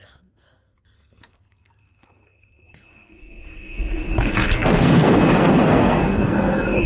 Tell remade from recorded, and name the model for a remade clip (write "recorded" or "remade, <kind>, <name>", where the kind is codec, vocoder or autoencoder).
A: remade, codec, SNAC